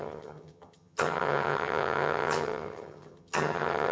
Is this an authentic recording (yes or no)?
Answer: no